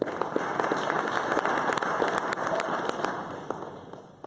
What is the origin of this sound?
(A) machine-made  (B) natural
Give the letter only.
B